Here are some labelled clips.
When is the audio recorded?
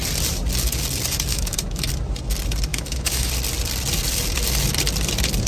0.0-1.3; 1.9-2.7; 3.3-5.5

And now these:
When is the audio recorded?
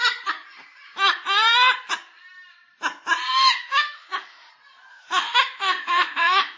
0.0-3.4; 4.5-4.9